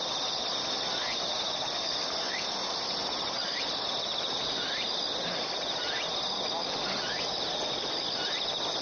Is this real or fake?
real